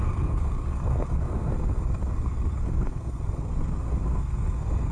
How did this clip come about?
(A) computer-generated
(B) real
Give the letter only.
A